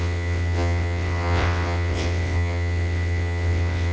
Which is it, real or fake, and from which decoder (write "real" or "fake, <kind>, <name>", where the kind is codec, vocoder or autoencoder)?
fake, vocoder, WaveNeXt